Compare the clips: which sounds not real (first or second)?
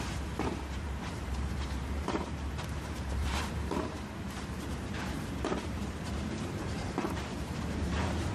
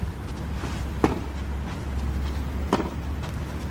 first